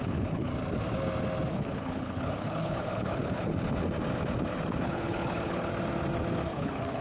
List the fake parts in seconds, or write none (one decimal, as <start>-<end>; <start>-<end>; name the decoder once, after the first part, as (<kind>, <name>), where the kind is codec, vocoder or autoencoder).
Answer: 0.0-0.5 (codec, HILCodec); 1.5-3.5; 4.8-5.7; 6.5-7.0